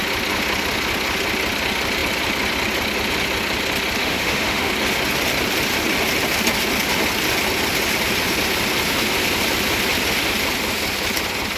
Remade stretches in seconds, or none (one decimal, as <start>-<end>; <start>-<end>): 4.0-4.7